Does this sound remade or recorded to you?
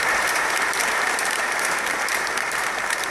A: remade